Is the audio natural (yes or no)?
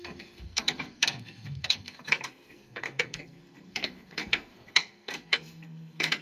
no